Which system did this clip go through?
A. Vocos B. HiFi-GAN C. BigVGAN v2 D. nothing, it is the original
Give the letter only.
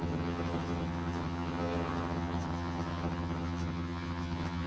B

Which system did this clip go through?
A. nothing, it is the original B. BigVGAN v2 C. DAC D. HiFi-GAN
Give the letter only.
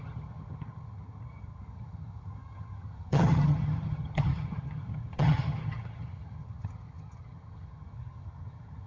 D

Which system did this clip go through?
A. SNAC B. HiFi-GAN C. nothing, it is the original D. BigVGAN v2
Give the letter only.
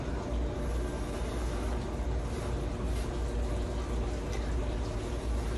C